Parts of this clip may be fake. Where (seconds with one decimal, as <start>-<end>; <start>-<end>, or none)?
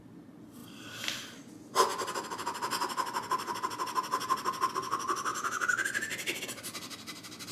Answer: none